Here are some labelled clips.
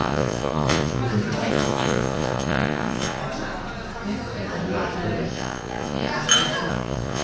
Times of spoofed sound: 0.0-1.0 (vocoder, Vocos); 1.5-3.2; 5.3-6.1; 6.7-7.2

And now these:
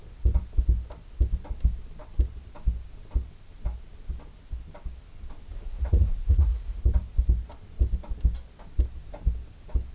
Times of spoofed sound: 5.5-6.8 (vocoder, Vocos)

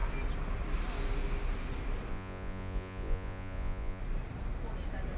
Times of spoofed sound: 2.1-4.0 (vocoder, Vocos)